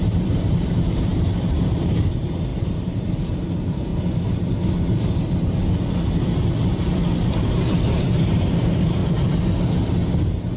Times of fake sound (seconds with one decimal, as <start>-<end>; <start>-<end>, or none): 0.0-3.9; 7.1-9.0